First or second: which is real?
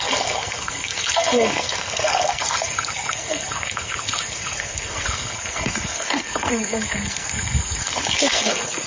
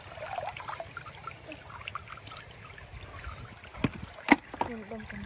second